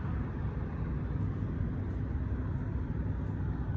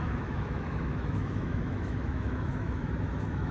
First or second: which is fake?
second